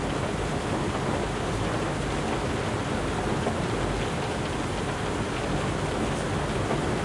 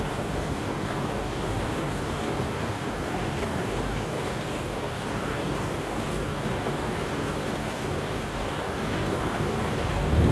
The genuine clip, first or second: first